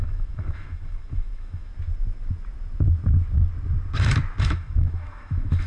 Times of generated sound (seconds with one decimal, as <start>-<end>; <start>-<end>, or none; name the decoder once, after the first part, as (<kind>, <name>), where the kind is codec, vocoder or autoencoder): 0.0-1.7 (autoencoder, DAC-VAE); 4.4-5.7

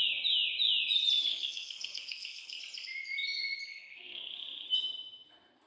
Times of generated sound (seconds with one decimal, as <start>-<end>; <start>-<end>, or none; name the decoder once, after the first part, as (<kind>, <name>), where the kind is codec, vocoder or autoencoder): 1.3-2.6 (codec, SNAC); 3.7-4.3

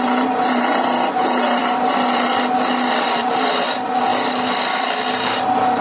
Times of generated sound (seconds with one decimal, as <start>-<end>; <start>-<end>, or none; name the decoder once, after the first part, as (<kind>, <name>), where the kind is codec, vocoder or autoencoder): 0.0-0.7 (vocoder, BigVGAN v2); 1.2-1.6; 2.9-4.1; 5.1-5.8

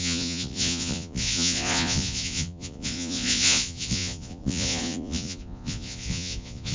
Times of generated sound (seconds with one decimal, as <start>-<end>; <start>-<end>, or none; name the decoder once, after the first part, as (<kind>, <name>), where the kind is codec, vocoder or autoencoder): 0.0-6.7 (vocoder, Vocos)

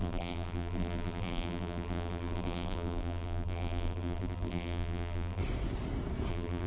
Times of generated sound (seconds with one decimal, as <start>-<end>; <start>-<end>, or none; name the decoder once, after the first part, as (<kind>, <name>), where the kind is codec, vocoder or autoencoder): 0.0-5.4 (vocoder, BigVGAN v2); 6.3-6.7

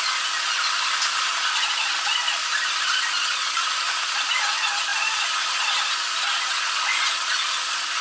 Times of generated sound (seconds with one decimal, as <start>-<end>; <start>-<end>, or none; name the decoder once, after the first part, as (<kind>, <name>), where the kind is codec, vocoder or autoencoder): none